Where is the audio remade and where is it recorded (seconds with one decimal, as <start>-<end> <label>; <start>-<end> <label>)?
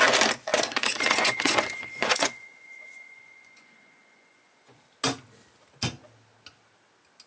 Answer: 0.0-0.5 recorded; 0.5-4.8 remade; 4.8-7.3 recorded